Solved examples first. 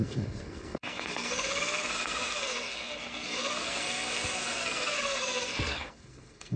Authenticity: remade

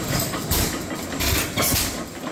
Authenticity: recorded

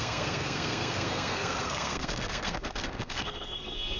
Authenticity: remade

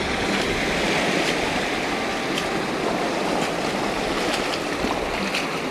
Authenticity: recorded